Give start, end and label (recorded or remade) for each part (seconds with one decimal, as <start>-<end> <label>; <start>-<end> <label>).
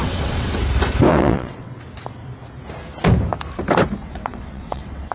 0.0-0.5 remade; 0.5-1.1 recorded; 1.1-1.8 remade; 1.8-4.0 recorded; 4.0-5.1 remade